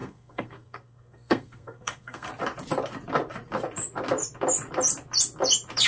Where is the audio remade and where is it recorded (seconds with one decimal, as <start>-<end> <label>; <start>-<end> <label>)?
0.0-2.3 remade; 2.3-5.9 recorded